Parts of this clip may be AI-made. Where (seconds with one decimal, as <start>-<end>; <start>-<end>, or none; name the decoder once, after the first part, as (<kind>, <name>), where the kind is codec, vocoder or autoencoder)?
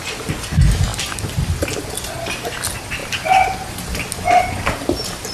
none